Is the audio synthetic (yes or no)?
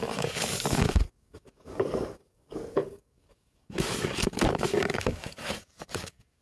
yes